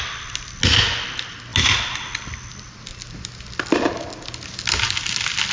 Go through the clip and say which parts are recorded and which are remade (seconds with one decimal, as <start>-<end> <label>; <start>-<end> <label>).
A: 0.0-5.5 recorded